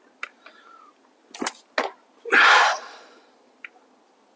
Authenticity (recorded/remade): recorded